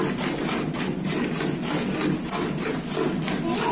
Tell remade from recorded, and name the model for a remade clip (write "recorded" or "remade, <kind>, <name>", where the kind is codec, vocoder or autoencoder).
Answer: recorded